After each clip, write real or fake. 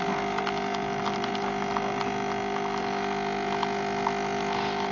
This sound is real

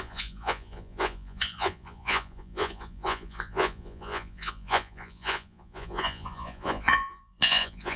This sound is fake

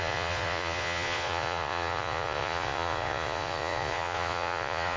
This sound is fake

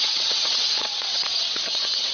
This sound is fake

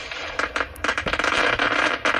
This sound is fake